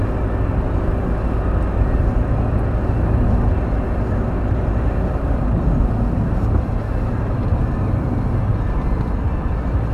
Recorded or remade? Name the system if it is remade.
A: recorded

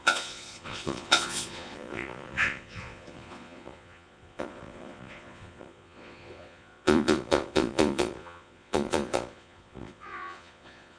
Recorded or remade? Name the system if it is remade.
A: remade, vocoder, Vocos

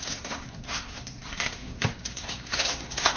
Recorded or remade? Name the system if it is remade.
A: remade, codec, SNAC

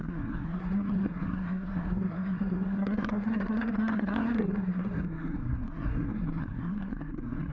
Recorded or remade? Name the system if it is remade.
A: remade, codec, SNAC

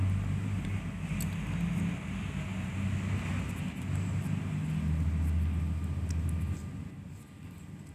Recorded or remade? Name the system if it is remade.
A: recorded